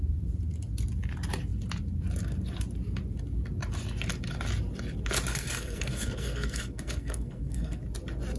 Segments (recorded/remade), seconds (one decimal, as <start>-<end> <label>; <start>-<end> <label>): 0.0-5.3 recorded; 5.3-7.8 remade; 7.8-8.4 recorded